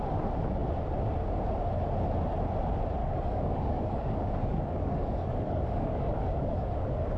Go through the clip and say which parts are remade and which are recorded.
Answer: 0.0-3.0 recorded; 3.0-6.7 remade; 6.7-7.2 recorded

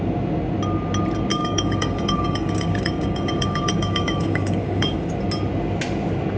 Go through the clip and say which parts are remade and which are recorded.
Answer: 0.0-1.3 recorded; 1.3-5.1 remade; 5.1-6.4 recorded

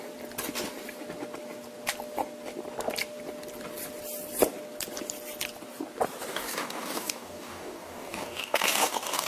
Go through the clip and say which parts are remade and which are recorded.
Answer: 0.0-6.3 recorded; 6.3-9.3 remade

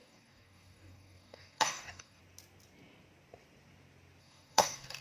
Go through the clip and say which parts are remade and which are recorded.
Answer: 0.0-2.2 remade; 2.2-4.2 recorded; 4.2-5.0 remade

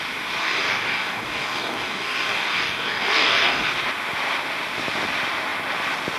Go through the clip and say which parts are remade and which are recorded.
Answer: 0.0-0.4 recorded; 0.4-3.7 remade; 3.7-6.2 recorded

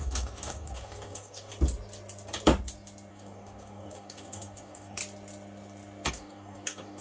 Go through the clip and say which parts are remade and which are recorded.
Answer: 0.0-1.5 remade; 1.5-3.1 recorded; 3.1-5.0 remade; 5.0-6.1 recorded; 6.1-7.0 remade

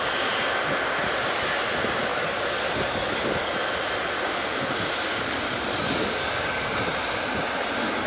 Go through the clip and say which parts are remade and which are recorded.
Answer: 0.0-2.1 recorded; 2.1-3.5 remade; 3.5-5.1 recorded; 5.1-6.8 remade; 6.8-8.1 recorded